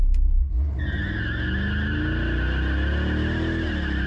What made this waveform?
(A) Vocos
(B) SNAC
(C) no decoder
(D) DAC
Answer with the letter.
C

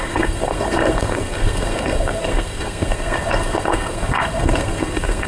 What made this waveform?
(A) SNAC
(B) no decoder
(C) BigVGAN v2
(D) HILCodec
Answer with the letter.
A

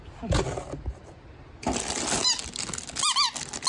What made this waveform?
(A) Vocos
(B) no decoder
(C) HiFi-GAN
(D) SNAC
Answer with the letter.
B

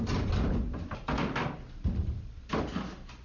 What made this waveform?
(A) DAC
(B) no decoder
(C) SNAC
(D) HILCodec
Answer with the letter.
B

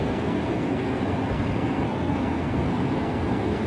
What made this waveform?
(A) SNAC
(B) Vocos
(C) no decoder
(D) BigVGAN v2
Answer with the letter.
A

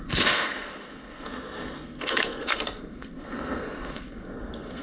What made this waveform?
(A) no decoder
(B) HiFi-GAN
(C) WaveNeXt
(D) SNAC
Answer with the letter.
D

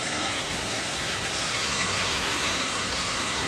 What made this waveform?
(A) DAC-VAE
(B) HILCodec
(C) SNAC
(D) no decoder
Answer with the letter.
C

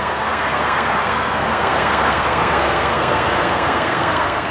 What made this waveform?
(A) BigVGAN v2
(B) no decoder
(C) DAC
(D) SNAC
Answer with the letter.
D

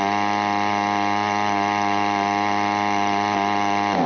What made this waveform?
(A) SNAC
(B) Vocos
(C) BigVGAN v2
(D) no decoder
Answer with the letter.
D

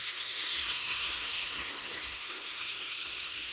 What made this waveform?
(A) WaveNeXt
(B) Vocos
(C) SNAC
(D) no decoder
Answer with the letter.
C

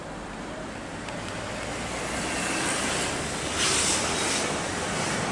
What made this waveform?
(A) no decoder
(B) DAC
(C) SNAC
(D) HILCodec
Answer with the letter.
A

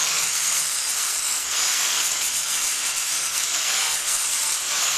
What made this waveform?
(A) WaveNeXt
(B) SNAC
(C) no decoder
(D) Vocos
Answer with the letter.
B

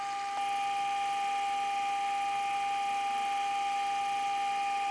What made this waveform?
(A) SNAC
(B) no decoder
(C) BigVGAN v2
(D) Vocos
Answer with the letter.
B